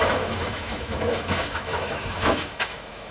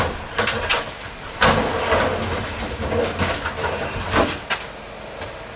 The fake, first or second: first